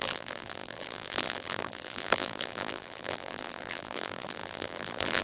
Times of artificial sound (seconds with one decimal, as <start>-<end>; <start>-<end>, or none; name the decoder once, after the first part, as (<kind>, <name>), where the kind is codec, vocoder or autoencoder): 0.0-5.2 (vocoder, BigVGAN v2)